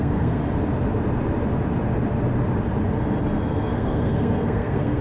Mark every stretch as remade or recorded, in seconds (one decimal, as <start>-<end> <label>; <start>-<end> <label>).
0.0-0.4 remade; 0.4-3.4 recorded; 3.4-5.0 remade